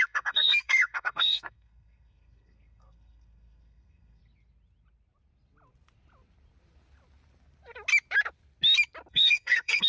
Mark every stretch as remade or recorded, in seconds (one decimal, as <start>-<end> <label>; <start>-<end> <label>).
0.0-4.2 remade; 4.2-9.1 recorded; 9.1-9.9 remade